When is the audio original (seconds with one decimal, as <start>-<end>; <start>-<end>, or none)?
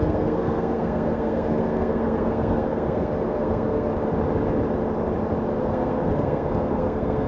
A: 3.9-5.6